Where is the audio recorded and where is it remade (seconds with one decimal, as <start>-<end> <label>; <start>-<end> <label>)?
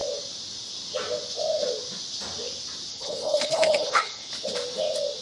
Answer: 0.0-2.9 recorded; 2.9-4.3 remade; 4.3-5.2 recorded